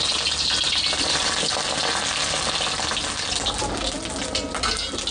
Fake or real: real